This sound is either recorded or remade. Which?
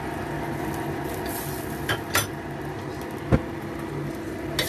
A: recorded